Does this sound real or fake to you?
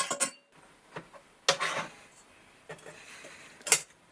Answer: real